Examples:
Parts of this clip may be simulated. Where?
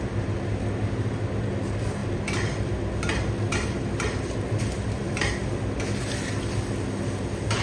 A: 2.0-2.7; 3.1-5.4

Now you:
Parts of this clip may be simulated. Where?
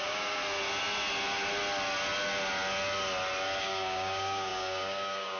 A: 0.0-0.4; 3.6-5.4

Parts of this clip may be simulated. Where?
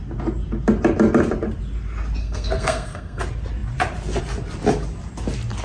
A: 2.2-3.2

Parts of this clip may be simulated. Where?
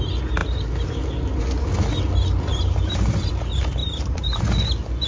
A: 2.5-3.3; 3.8-4.4